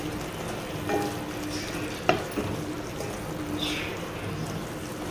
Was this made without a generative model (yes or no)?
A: yes